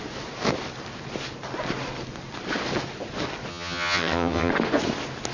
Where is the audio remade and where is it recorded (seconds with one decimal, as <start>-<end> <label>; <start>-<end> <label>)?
0.0-3.5 recorded; 3.5-4.5 remade; 4.5-5.3 recorded